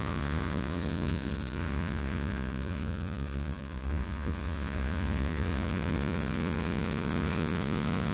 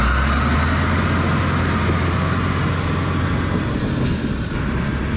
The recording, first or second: second